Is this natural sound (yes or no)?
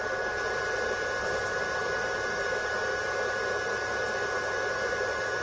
yes